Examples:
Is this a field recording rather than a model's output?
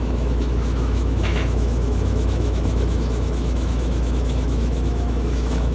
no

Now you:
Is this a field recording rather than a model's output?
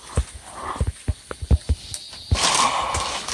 yes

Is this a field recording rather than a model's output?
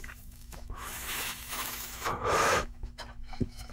no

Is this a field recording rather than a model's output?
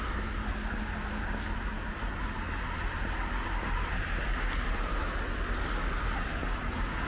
yes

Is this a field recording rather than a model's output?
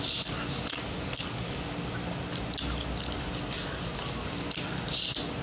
yes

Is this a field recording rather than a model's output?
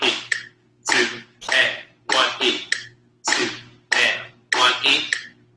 yes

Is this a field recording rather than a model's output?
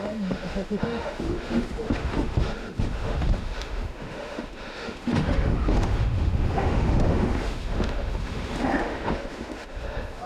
no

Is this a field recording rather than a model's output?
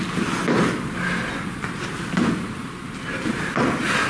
yes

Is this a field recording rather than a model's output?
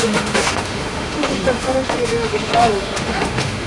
no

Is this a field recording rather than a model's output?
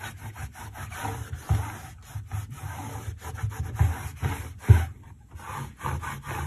yes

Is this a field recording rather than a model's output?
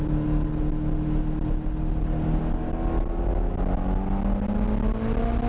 yes